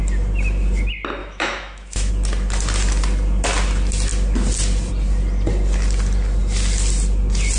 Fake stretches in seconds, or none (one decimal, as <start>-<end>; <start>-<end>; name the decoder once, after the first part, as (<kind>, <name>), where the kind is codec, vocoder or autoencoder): 1.2-2.1 (autoencoder, DAC-VAE)